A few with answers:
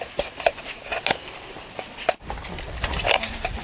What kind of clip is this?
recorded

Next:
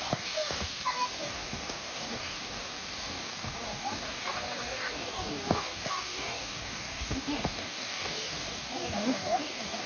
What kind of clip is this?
remade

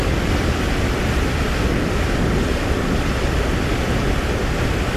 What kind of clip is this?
recorded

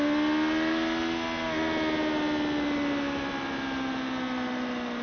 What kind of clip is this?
recorded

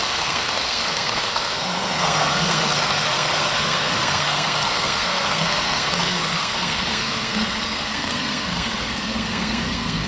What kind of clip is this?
remade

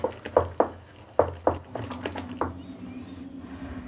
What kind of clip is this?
recorded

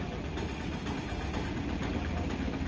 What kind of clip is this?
recorded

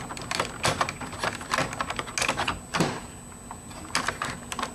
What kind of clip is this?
recorded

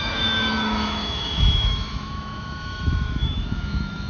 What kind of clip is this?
remade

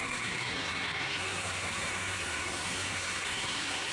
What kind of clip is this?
remade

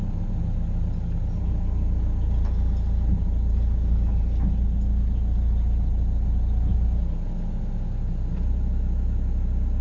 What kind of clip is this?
recorded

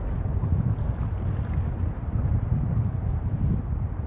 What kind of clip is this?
recorded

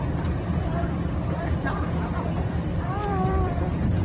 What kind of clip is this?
remade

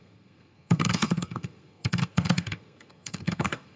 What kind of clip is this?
remade